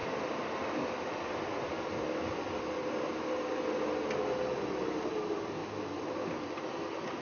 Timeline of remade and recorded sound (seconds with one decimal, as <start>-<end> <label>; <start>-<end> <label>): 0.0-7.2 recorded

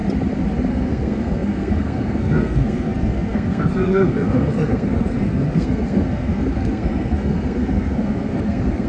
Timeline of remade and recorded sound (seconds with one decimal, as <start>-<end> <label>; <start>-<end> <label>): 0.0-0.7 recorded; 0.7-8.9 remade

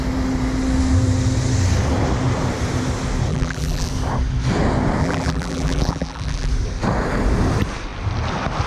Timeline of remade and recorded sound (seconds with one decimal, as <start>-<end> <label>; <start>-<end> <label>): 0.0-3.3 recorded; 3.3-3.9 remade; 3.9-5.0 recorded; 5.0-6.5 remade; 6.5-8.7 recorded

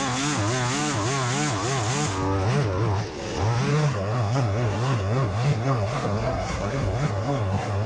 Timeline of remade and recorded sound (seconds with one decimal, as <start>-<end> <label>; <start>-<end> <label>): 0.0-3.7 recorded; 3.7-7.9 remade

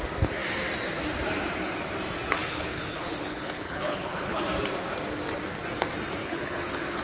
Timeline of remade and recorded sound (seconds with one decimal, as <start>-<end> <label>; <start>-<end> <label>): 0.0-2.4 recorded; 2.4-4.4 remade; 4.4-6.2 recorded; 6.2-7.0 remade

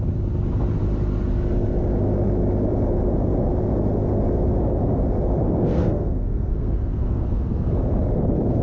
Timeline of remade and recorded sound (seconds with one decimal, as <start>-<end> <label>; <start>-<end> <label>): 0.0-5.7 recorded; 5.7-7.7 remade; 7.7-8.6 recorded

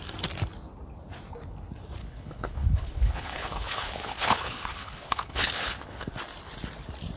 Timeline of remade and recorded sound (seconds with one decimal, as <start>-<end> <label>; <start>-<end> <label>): 0.0-2.0 recorded; 2.0-6.2 remade; 6.2-7.2 recorded